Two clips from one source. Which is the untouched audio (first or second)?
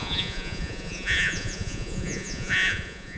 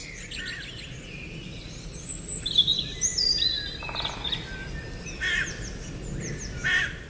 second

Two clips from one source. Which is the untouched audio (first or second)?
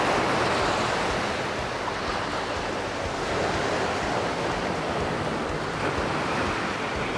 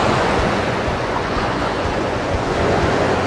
first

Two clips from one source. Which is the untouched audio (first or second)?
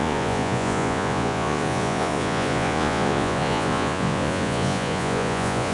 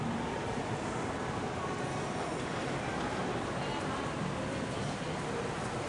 second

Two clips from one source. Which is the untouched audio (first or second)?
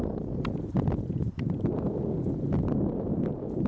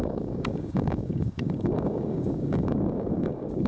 first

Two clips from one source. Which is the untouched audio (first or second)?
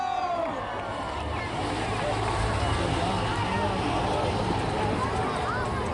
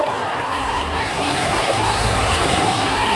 first